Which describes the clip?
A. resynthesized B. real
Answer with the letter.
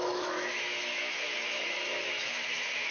A